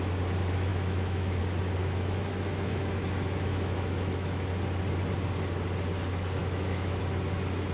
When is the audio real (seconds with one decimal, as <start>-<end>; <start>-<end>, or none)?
0.0-0.7; 1.4-1.8; 4.5-6.4; 7.0-7.7